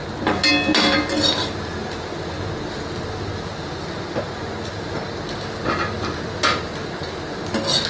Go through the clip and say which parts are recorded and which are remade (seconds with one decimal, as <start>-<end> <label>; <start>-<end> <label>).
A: 0.0-7.9 recorded